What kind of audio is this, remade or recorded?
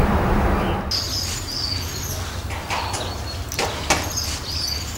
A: recorded